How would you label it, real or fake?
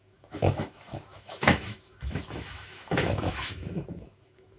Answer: fake